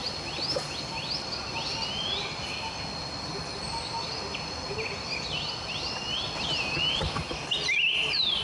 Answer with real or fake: real